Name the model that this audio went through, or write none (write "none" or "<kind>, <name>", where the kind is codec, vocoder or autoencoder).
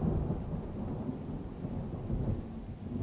none